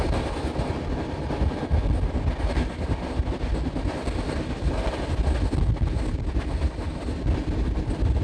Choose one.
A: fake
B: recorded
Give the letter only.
B